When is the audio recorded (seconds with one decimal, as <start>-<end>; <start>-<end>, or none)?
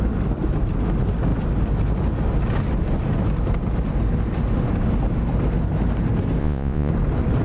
0.0-6.4; 6.9-7.4